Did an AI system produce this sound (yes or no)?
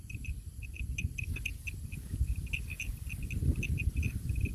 no